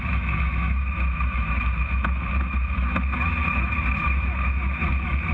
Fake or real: fake